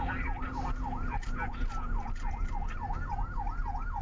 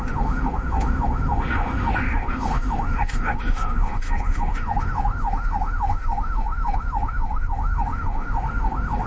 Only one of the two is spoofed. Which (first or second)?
second